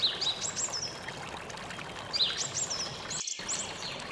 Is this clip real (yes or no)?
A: yes